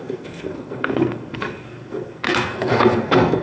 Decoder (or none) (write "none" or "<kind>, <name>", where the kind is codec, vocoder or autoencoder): codec, SNAC